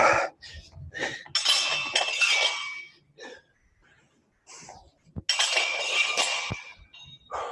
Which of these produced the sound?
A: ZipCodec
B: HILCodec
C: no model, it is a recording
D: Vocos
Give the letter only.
C